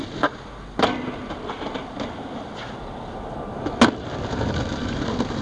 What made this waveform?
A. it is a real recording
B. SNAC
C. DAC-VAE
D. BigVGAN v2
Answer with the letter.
A